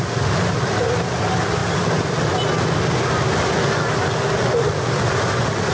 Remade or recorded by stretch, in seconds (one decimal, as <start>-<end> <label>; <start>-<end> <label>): 0.0-5.7 recorded